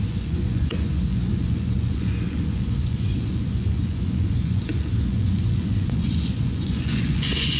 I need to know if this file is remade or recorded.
remade